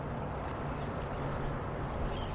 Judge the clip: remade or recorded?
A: recorded